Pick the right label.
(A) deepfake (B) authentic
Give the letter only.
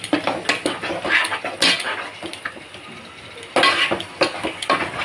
B